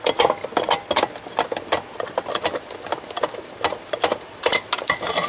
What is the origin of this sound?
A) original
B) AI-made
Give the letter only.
A